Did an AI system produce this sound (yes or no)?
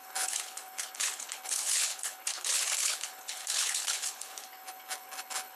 yes